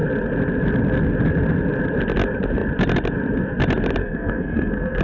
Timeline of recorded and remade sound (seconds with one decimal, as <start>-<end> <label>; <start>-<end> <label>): 0.0-4.0 recorded; 4.0-5.0 remade